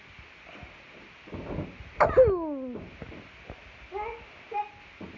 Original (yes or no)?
yes